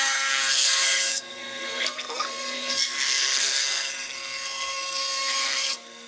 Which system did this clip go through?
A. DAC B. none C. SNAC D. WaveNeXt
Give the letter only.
C